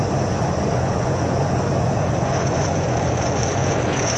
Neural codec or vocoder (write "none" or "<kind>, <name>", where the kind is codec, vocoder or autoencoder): vocoder, Vocos